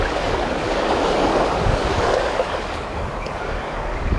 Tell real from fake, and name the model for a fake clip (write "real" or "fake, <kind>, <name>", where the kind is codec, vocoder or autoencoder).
fake, codec, DAC